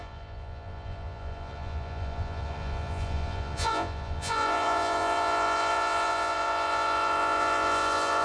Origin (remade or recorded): remade